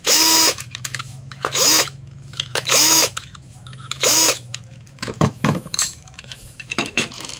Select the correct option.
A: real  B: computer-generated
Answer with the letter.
B